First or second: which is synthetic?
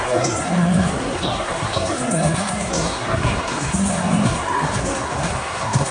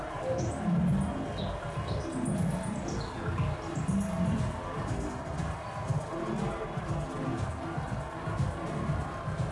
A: first